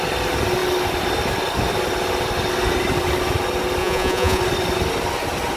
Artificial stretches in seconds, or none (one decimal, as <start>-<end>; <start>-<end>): 3.8-4.4